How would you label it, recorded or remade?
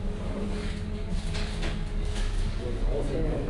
remade